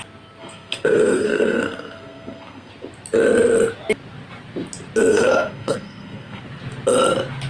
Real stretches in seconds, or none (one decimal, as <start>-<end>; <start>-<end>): 0.0-0.4; 2.7-5.1; 6.4-7.5